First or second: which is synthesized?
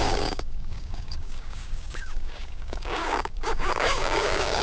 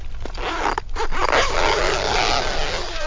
first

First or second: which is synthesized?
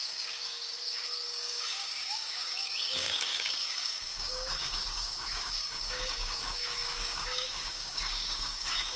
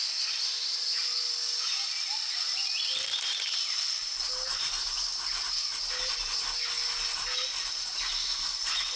first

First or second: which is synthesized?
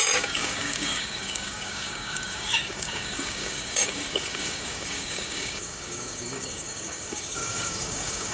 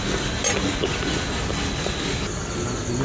first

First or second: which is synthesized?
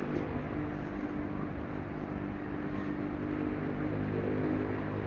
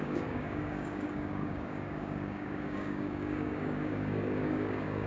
second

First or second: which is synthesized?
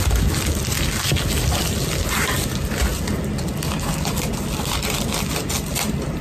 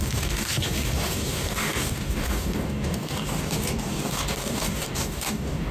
second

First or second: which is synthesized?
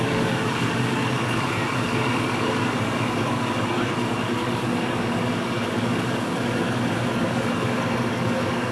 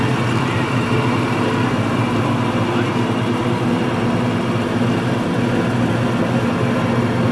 first